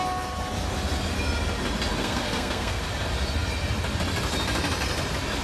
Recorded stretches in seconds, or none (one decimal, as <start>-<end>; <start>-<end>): 0.0-2.0; 2.8-5.4